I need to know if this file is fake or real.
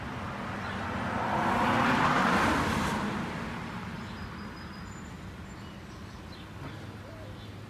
real